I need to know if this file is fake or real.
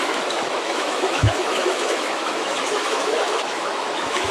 fake